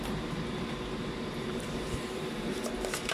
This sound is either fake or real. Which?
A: fake